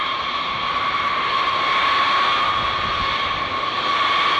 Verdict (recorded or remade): recorded